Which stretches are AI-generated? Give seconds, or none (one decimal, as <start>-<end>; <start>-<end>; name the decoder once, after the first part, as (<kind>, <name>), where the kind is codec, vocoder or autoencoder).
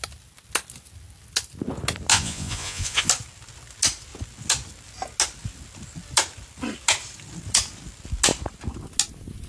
2.1-3.1 (vocoder, Vocos)